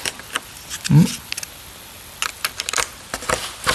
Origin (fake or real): real